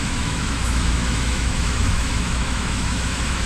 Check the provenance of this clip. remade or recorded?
remade